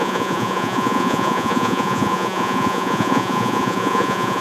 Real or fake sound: fake